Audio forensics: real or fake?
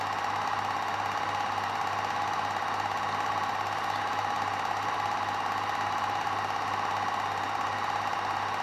real